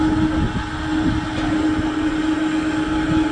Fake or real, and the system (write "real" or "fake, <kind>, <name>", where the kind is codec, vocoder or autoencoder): real